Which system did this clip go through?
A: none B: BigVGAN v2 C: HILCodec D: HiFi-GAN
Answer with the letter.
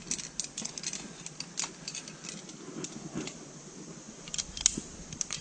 A